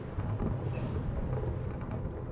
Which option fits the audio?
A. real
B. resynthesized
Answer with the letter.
A